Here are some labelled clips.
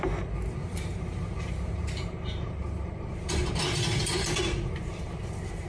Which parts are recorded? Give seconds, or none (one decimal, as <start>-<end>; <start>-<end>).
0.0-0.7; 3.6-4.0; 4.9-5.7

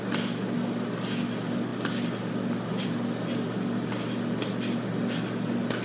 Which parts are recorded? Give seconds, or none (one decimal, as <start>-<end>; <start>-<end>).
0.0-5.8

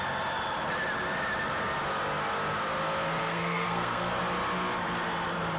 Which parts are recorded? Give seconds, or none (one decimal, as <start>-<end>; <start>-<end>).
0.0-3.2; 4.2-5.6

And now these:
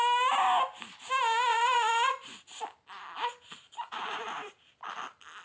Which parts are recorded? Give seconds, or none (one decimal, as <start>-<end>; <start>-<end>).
0.0-1.5; 4.7-5.4

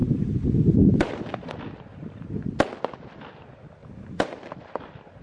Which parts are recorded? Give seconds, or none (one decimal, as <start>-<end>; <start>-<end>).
1.5-1.9; 2.4-3.8; 4.4-5.2

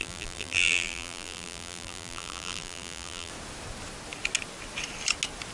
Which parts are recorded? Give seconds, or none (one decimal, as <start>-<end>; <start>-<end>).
3.3-5.5

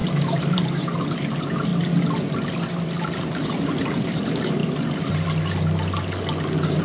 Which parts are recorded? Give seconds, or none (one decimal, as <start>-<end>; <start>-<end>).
1.7-2.5; 4.6-6.8

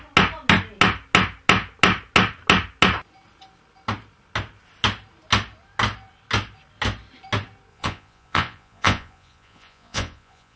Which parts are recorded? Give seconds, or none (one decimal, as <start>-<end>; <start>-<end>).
0.0-7.7